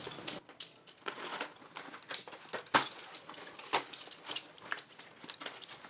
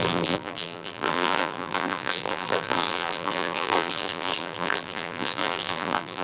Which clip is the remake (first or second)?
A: second